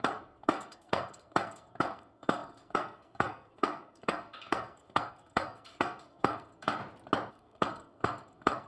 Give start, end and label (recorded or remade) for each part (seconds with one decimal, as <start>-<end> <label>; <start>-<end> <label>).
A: 0.0-6.8 remade; 6.8-7.3 recorded; 7.3-8.7 remade